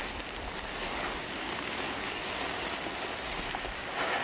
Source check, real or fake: real